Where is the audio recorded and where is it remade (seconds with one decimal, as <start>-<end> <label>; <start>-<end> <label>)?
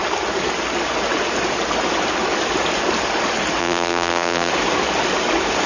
0.0-3.6 recorded; 3.6-4.5 remade; 4.5-5.7 recorded